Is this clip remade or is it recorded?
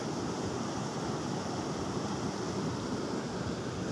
recorded